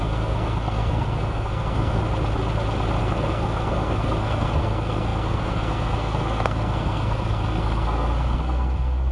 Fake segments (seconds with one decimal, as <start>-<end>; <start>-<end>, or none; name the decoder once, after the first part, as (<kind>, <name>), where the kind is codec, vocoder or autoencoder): 0.0-2.0 (codec, SNAC); 3.0-9.1